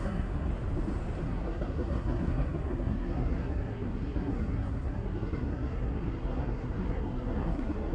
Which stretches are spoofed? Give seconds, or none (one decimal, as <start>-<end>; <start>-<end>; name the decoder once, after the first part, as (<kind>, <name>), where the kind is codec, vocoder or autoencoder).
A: 0.0-0.5 (codec, SNAC); 1.2-7.9